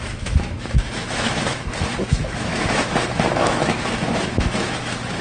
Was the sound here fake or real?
fake